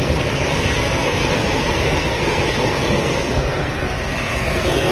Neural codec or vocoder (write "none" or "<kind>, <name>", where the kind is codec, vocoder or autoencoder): codec, SNAC